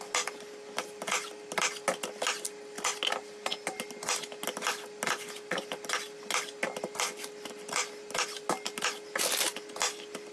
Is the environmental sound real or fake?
real